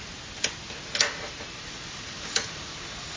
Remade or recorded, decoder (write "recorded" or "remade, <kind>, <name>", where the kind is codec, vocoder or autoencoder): recorded